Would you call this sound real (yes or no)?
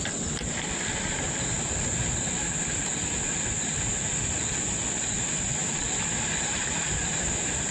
yes